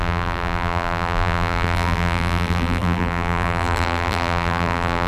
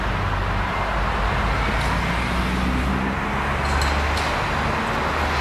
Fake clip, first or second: first